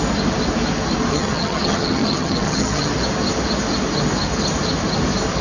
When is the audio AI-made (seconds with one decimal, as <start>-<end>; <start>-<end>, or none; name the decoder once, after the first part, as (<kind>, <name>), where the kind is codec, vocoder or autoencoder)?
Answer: 1.1-2.9 (vocoder, HiFi-GAN)